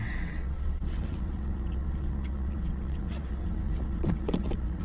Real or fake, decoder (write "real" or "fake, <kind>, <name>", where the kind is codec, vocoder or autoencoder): fake, vocoder, WaveNeXt